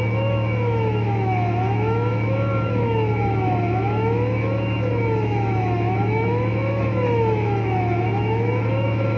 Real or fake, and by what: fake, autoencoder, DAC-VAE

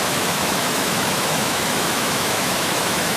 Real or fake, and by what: fake, autoencoder, DAC-VAE